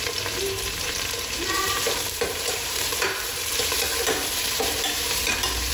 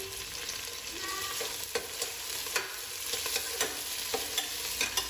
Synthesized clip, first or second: first